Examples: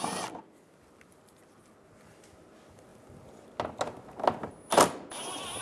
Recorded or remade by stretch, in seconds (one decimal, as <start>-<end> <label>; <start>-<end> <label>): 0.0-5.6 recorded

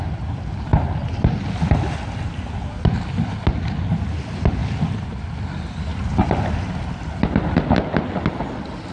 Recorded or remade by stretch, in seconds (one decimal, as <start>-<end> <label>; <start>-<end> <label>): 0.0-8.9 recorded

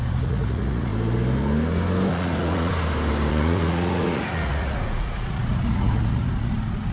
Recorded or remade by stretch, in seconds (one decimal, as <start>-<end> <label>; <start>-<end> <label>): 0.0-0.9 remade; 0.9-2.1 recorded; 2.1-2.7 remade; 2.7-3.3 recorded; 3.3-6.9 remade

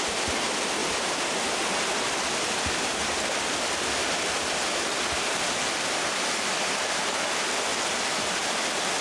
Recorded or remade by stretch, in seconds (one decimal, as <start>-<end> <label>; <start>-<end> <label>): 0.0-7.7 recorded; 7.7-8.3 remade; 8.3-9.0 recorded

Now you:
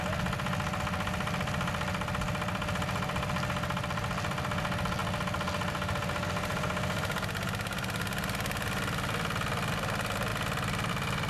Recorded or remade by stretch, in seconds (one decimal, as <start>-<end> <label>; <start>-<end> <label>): 0.0-11.3 recorded

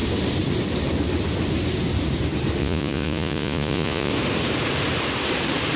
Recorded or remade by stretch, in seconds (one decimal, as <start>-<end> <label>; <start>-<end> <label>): 0.0-2.6 recorded; 2.6-4.1 remade; 4.1-5.8 recorded